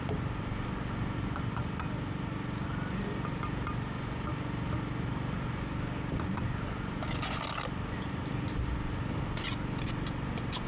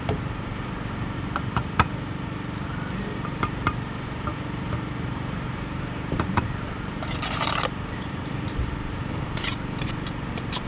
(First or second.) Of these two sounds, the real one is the first